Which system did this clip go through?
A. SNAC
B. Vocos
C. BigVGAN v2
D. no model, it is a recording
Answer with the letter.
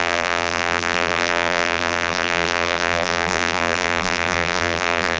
C